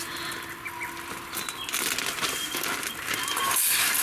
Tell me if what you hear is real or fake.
real